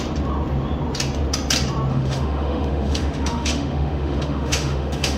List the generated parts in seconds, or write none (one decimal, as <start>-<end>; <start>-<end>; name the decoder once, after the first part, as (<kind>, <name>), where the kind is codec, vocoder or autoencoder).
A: 1.9-5.2 (autoencoder, DAC-VAE)